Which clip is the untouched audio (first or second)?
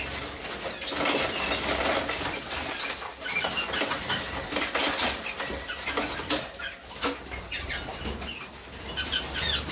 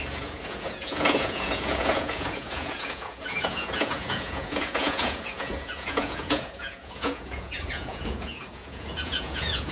first